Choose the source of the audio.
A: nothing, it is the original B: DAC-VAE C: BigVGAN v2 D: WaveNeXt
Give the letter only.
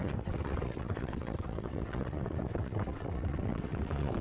D